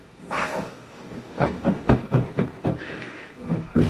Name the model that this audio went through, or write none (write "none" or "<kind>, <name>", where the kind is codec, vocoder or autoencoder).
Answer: codec, DAC